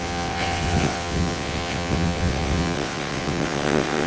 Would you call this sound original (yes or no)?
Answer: no